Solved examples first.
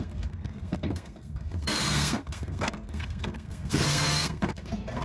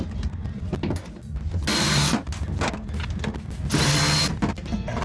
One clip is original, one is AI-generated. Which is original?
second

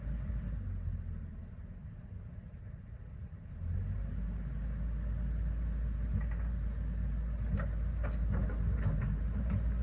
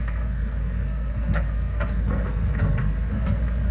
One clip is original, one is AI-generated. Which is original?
first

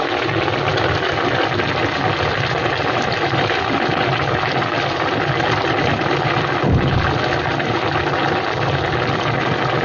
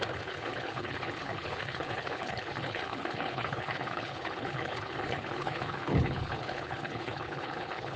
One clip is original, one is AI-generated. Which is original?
first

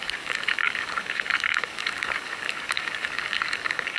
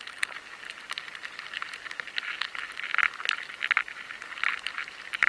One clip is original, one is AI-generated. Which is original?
second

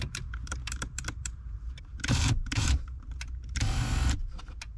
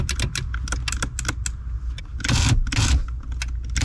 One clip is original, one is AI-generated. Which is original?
second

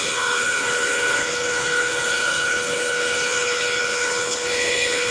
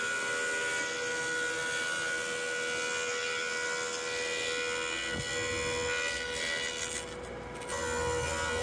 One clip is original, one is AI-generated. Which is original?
second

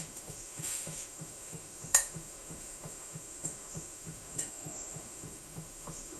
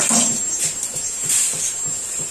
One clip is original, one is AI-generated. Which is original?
second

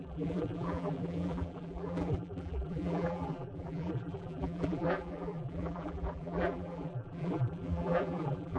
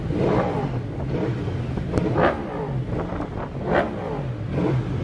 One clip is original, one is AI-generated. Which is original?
second